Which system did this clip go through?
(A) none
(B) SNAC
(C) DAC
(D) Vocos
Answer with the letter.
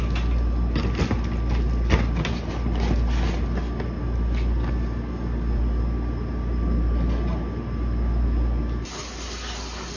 A